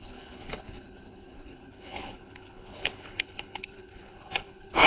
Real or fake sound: fake